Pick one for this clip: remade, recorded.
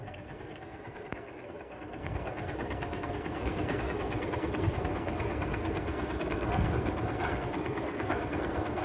remade